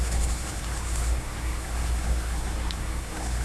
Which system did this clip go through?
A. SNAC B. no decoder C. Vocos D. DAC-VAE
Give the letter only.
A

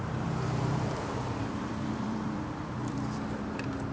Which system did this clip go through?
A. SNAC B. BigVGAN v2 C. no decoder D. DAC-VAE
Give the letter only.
B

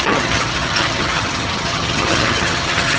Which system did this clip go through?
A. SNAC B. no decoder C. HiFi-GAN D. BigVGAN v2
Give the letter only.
C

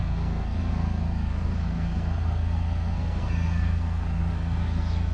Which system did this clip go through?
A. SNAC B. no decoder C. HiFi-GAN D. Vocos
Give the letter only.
A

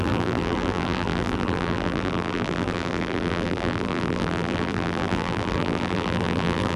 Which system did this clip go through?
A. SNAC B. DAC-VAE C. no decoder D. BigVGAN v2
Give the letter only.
D